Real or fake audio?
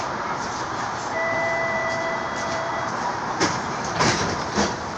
fake